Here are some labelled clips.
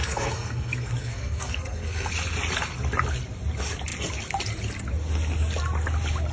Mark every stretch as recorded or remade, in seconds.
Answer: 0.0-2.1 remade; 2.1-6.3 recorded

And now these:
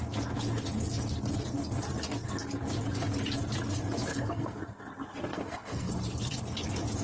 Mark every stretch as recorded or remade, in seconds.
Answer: 0.0-4.1 recorded; 4.1-4.8 remade; 4.8-5.3 recorded; 5.3-5.9 remade; 5.9-7.0 recorded